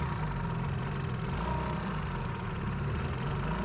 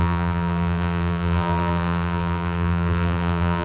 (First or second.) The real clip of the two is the first